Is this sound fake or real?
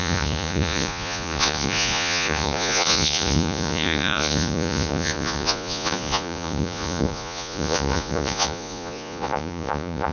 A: fake